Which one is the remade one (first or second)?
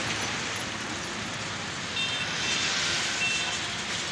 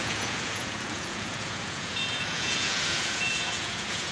second